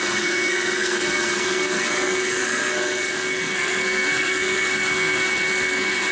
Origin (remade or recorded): remade